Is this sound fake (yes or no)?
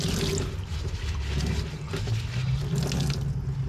no